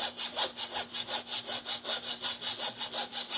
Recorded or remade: recorded